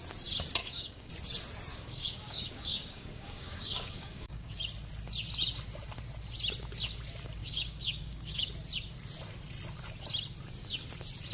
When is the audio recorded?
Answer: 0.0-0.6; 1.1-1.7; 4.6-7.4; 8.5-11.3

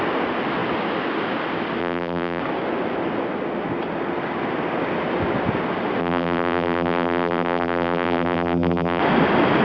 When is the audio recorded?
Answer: 0.0-1.8; 2.4-6.0; 9.0-9.6

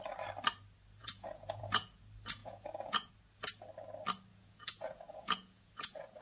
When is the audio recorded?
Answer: 0.0-1.0; 2.0-2.4; 3.1-4.3

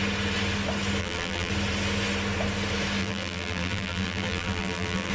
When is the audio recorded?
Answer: 0.0-1.0; 1.5-3.0

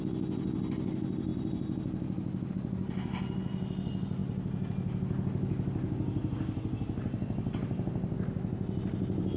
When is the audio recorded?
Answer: 0.0-9.4

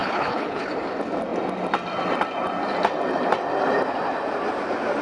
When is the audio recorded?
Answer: 0.7-5.0

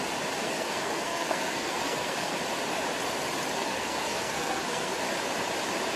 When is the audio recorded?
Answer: 0.0-0.4; 2.4-3.6; 4.9-6.0